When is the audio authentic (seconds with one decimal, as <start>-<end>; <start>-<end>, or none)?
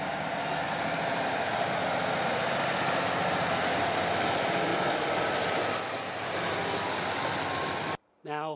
0.0-8.6